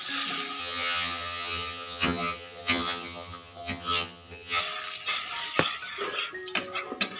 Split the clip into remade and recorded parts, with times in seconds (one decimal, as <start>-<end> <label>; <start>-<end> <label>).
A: 0.0-0.6 recorded; 0.6-4.6 remade; 4.6-7.2 recorded